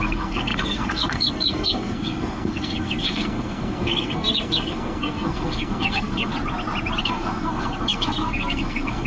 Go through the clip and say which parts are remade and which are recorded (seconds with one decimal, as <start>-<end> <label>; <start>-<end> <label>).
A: 0.0-6.3 remade; 6.3-7.0 recorded; 7.0-9.1 remade